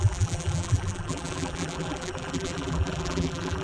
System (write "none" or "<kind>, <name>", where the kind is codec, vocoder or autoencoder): vocoder, BigVGAN v2